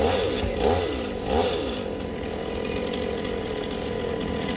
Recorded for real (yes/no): yes